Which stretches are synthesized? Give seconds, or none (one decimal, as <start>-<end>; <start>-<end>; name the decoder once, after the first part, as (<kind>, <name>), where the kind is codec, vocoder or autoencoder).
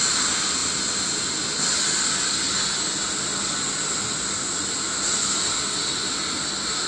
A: none